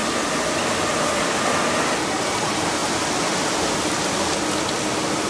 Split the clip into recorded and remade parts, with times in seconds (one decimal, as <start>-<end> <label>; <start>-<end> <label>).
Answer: 0.0-5.3 recorded